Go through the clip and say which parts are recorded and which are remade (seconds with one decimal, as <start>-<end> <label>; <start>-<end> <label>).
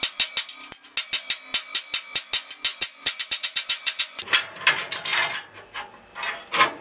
0.0-2.7 recorded; 2.7-4.2 remade; 4.2-6.8 recorded